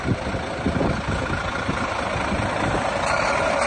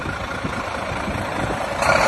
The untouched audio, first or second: first